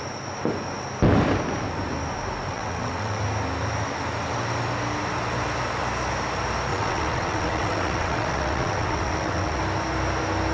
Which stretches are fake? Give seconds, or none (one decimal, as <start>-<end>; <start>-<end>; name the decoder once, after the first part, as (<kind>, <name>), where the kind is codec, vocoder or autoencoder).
2.5-3.2 (vocoder, WaveNeXt); 6.7-9.6

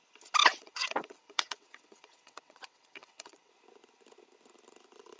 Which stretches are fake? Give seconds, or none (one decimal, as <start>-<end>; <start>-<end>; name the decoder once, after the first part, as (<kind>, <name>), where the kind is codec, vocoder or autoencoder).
0.4-3.5 (vocoder, WaveNeXt)